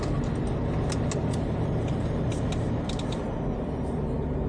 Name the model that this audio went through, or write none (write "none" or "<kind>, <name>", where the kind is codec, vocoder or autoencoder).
none